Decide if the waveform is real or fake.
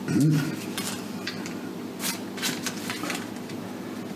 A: real